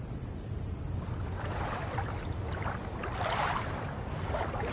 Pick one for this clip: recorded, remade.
recorded